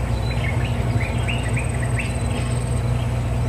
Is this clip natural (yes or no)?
yes